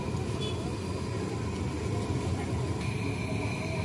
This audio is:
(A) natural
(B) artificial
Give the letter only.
A